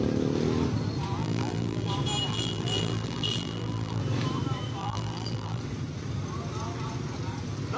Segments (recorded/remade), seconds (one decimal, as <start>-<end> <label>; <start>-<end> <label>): 0.0-1.2 recorded; 1.2-1.9 remade; 1.9-2.3 recorded; 2.3-4.0 remade; 4.0-4.8 recorded; 4.8-5.6 remade; 5.6-7.8 recorded